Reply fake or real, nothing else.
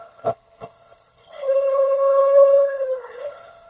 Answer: fake